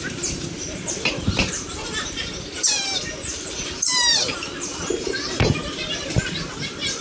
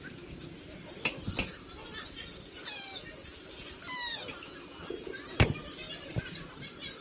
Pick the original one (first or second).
second